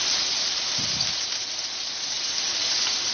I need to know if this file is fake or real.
real